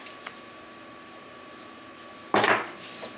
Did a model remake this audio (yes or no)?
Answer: yes